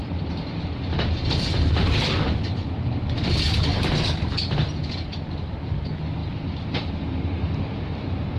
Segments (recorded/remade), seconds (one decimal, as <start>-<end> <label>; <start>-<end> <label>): 0.0-0.6 remade; 0.6-6.2 recorded; 6.2-6.9 remade; 6.9-8.4 recorded